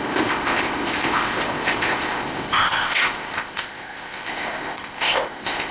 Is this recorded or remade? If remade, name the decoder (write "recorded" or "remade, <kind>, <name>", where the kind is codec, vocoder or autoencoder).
remade, codec, ZipCodec